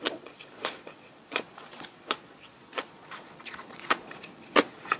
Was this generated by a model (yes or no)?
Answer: yes